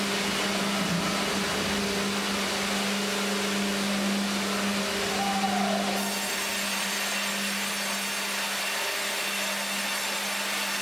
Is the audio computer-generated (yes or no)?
no